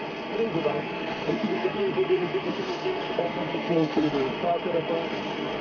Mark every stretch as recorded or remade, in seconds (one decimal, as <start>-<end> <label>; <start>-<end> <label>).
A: 0.0-0.7 recorded; 0.7-4.1 remade; 4.1-5.6 recorded